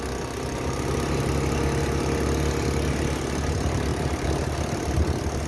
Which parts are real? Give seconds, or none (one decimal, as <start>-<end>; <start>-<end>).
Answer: 0.0-3.9; 4.6-5.5